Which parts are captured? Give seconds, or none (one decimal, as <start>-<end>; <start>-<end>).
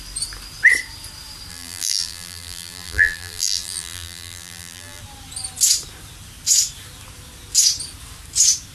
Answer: 0.0-1.5; 5.0-8.7